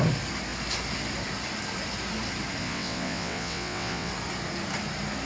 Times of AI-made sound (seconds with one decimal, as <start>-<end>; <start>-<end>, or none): 2.6-4.1